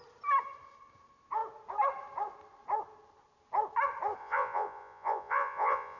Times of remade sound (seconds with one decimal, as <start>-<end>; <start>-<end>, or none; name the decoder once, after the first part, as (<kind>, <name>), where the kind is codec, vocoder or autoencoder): 4.2-6.0 (vocoder, Vocos)